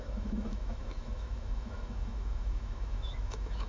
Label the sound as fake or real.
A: fake